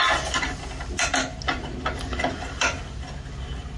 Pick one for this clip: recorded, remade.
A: recorded